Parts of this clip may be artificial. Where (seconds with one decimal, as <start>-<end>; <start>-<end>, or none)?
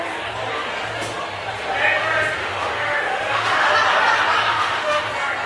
2.4-3.7; 4.5-5.1